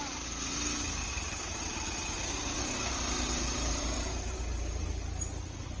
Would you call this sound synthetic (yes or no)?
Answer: no